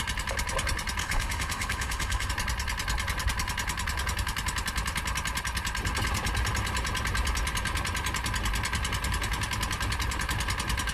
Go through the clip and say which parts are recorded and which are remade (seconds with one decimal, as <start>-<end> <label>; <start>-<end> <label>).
0.0-1.0 recorded; 1.0-2.3 remade; 2.3-10.9 recorded